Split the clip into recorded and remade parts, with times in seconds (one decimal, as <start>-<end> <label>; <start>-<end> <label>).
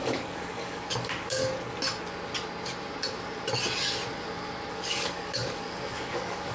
0.0-1.4 remade; 1.4-4.7 recorded; 4.7-6.5 remade